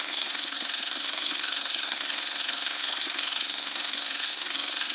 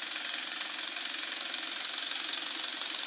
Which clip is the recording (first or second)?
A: second